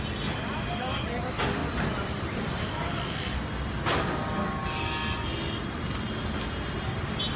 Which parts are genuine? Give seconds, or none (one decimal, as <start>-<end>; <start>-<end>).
0.0-7.4